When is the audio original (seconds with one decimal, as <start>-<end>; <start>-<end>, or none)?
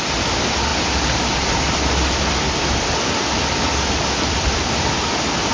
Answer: 0.0-5.5